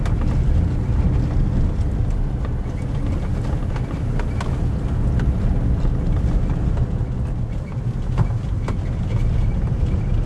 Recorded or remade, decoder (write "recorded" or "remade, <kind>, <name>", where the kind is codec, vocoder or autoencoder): recorded